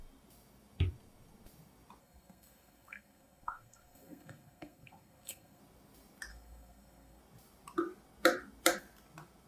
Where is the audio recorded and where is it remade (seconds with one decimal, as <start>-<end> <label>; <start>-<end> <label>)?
0.0-2.0 recorded; 2.0-5.6 remade; 5.6-6.3 recorded; 6.3-7.2 remade; 7.2-9.5 recorded